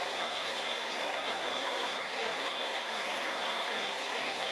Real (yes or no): no